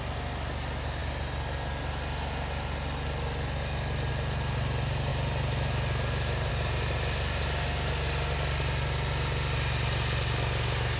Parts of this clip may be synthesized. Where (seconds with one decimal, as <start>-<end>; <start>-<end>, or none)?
none